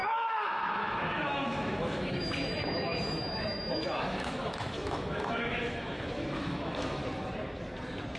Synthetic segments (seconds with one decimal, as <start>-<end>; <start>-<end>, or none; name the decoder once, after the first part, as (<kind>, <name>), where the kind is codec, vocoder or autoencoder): 0.0-7.0 (autoencoder, DAC-VAE)